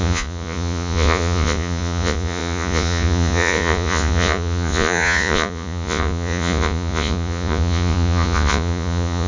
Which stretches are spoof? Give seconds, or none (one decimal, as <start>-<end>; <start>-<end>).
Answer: 0.0-9.3